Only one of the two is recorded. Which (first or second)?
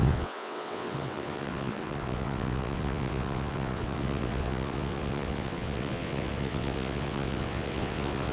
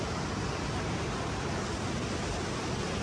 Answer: second